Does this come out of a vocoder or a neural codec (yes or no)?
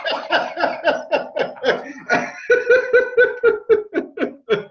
no